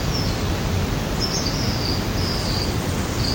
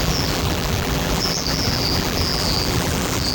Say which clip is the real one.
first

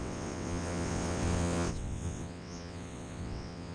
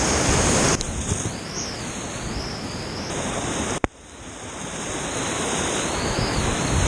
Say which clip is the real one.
second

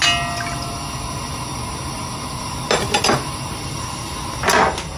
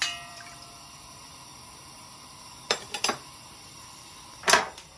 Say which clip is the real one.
first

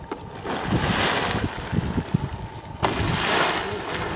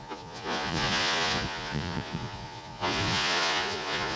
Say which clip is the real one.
first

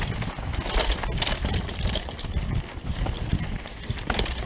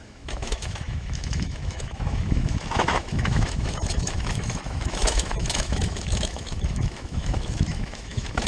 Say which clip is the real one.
first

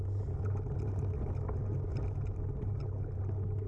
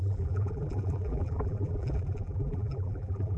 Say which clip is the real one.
first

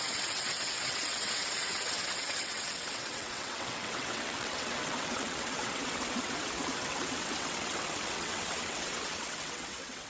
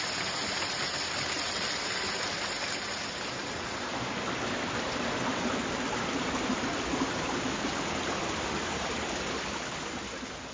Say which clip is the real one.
second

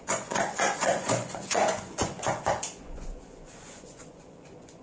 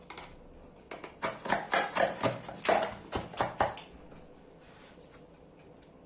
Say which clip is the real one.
second